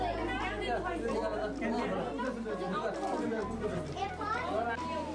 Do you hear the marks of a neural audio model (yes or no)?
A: no